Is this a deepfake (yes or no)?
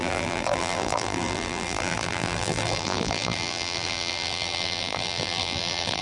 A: yes